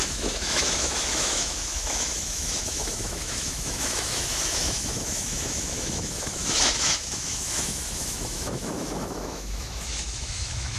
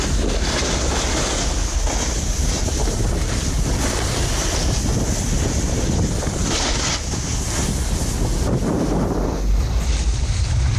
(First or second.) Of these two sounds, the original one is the second